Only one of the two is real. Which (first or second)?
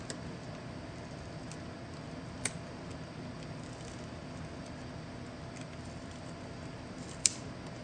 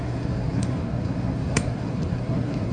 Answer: first